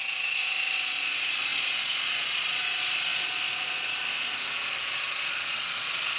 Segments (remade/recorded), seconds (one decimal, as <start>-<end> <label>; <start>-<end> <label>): 0.0-6.2 remade